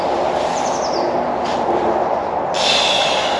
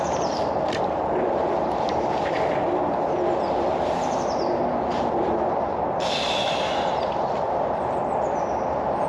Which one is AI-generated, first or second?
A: second